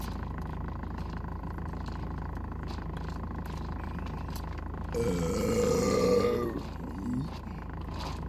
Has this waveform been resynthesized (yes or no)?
no